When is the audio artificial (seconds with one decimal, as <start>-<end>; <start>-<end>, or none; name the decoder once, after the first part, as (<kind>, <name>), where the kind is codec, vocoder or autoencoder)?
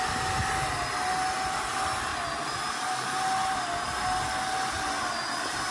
none